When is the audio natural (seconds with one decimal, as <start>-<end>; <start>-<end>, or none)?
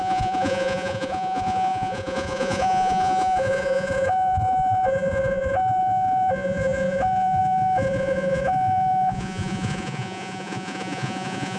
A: none